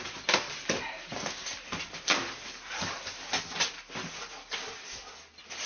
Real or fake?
real